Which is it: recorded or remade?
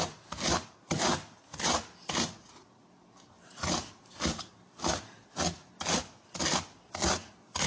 recorded